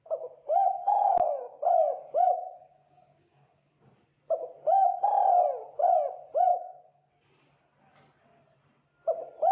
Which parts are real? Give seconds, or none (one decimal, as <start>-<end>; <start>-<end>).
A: 0.0-0.8; 3.7-6.5; 7.1-9.5